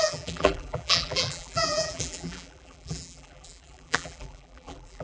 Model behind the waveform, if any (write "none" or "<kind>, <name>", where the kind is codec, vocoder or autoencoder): vocoder, BigVGAN v2